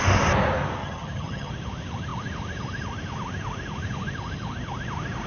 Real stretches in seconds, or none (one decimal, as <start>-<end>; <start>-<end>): 0.0-0.8; 1.5-5.3